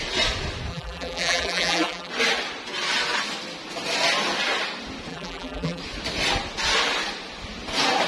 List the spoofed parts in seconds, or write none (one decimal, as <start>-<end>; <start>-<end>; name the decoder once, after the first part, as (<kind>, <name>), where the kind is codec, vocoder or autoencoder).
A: 0.7-2.1 (vocoder, BigVGAN v2); 5.1-5.8